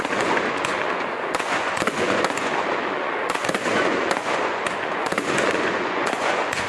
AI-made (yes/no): yes